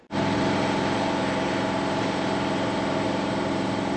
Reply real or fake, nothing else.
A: fake